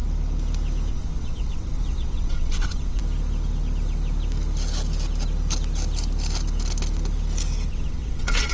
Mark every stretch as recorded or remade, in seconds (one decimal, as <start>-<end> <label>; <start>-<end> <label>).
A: 0.0-0.9 recorded; 0.9-3.0 remade; 3.0-7.7 recorded; 7.7-8.5 remade